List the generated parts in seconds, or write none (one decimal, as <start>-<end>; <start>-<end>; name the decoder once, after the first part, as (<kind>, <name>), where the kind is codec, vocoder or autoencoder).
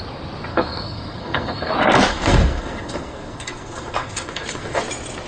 0.5-1.7 (codec, SNAC); 2.1-4.8